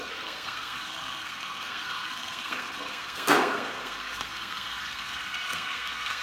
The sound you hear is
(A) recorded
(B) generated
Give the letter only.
B